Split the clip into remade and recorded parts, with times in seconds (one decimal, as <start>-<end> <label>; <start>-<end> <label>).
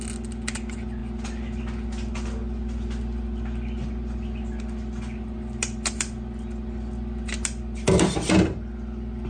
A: 0.0-9.3 recorded